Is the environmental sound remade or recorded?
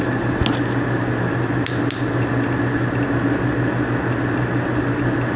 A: recorded